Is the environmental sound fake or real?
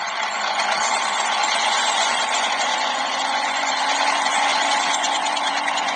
fake